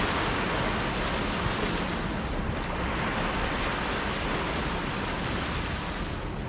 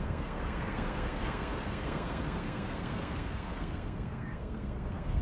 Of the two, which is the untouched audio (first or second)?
first